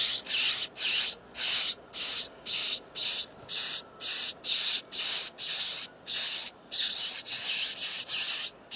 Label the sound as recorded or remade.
recorded